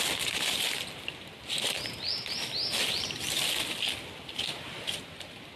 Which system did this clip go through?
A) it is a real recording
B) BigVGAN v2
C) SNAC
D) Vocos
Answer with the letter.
A